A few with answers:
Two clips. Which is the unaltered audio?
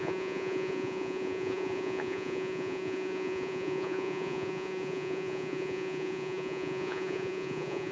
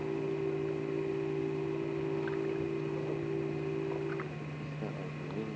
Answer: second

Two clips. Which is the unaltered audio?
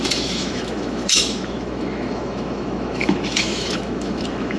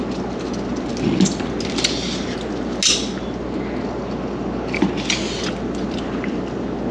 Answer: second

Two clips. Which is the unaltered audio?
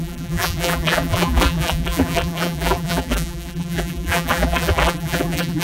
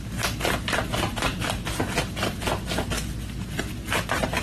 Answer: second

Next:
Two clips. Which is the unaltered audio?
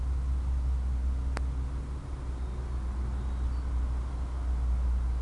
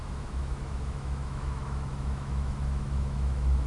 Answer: first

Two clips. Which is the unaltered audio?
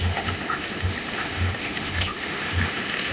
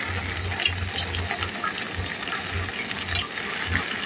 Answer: second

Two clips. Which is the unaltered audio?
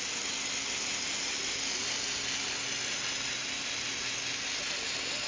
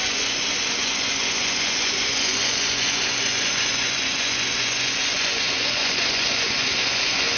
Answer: first